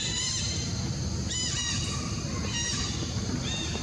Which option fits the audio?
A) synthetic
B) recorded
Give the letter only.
A